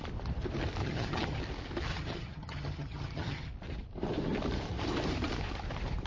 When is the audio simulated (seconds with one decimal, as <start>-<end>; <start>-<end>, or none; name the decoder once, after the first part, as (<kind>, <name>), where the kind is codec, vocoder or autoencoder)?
0.8-1.4 (vocoder, HiFi-GAN); 1.9-3.5